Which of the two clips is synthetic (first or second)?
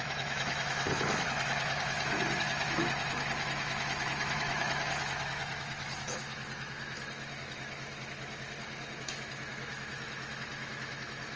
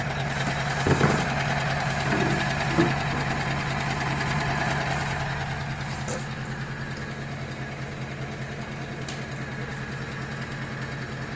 first